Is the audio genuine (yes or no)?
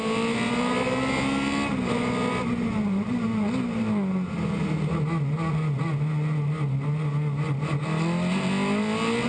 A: yes